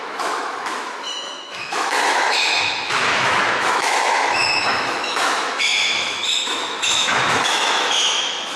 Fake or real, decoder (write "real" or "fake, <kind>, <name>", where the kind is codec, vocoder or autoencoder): fake, autoencoder, DAC-VAE